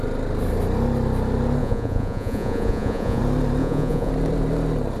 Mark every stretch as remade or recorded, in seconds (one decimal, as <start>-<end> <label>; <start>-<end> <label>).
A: 0.0-1.6 recorded; 1.6-3.2 remade; 3.2-3.6 recorded; 3.6-4.1 remade; 4.1-5.0 recorded